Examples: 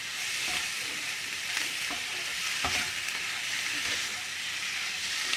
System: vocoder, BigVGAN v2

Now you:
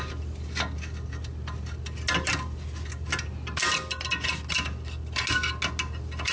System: none